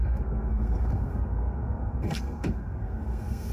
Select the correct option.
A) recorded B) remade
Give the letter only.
B